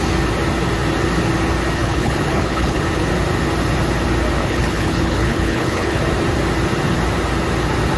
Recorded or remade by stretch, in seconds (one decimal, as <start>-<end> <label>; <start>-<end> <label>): 0.0-1.8 recorded; 1.8-2.8 remade; 2.8-4.4 recorded; 4.4-6.0 remade; 6.0-8.0 recorded